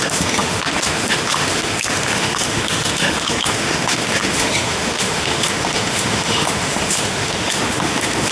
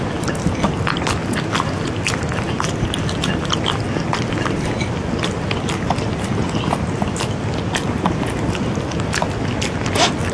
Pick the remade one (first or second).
first